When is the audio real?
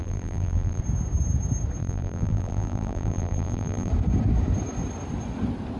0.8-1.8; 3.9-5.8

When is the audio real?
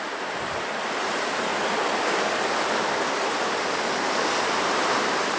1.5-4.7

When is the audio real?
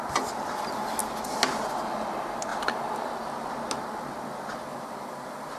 0.0-2.5; 3.1-4.7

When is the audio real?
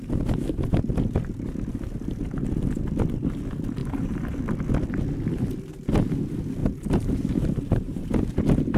0.0-3.8; 4.4-6.6; 8.4-8.8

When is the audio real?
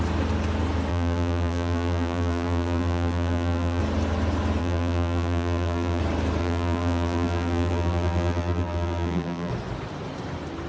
0.0-0.9; 3.8-4.6; 6.0-6.4; 9.5-10.7